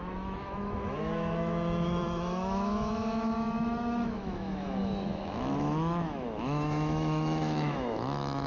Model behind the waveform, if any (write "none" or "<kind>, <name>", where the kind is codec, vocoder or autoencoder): autoencoder, DAC-VAE